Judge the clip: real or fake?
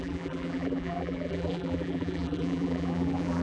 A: fake